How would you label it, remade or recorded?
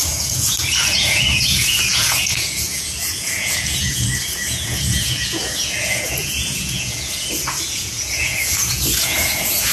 remade